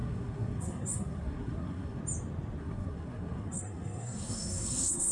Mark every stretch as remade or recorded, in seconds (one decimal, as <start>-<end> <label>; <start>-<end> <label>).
0.0-2.0 remade; 2.0-2.6 recorded; 2.6-5.1 remade